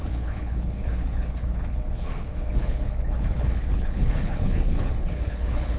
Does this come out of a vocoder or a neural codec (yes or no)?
yes